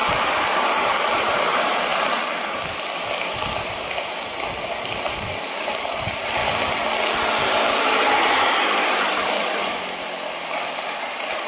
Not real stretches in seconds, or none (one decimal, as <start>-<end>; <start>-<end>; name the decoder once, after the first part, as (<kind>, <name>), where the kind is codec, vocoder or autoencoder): 0.0-1.9 (vocoder, BigVGAN v2); 5.1-6.4; 8.5-11.5